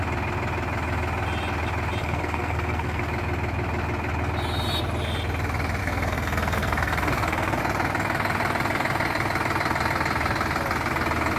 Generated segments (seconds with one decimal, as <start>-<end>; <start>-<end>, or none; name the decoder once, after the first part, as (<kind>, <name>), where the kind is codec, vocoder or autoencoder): 2.0-3.0 (codec, SNAC); 5.8-7.6